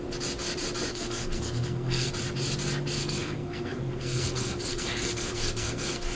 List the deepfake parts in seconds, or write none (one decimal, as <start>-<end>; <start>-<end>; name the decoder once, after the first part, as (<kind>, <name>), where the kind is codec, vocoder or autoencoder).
0.9-2.1 (codec, SNAC); 3.0-6.2